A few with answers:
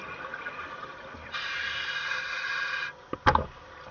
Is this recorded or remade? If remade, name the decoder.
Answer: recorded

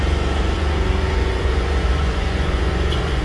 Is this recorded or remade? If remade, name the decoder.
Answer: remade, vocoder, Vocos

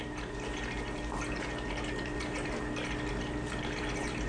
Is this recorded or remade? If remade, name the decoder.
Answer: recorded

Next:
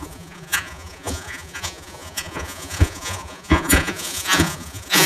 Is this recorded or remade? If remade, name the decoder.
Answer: remade, vocoder, Vocos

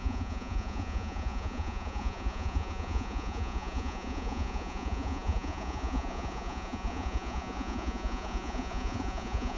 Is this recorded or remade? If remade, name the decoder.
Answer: remade, vocoder, Vocos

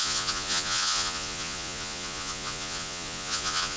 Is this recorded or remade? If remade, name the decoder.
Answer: remade, vocoder, Vocos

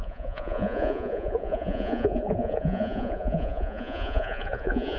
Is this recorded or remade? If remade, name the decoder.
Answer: remade, vocoder, Vocos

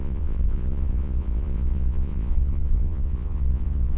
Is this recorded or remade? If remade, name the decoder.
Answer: remade, vocoder, Vocos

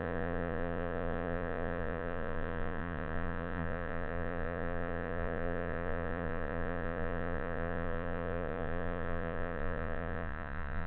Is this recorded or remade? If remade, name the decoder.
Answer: remade, vocoder, Vocos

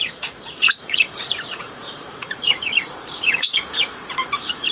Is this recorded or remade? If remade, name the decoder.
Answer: remade, vocoder, Vocos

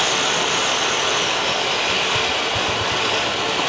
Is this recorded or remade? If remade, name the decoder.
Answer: recorded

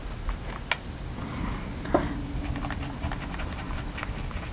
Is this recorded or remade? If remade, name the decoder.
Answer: recorded